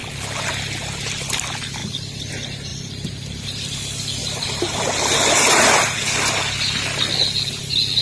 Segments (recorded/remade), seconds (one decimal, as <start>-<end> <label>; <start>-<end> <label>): 0.0-0.5 remade; 0.5-2.7 recorded; 2.7-3.8 remade; 3.8-4.2 recorded; 4.2-6.0 remade; 6.0-8.0 recorded